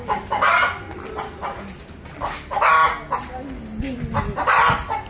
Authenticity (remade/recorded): recorded